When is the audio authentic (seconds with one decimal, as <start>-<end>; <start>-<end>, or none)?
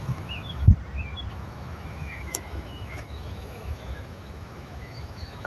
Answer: 0.7-1.3